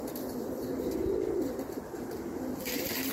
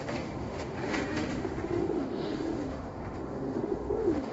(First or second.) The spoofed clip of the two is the second